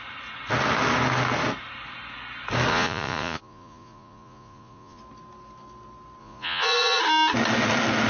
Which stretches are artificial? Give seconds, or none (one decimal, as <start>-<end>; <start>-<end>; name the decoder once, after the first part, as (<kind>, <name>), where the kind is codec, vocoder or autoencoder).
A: 2.7-5.0 (vocoder, Vocos); 6.2-7.0